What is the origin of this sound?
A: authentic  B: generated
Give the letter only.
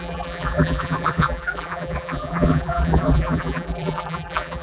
B